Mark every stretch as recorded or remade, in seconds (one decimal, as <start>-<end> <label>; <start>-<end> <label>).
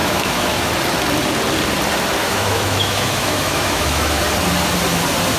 0.0-0.7 remade; 0.7-2.2 recorded; 2.2-4.2 remade; 4.2-5.4 recorded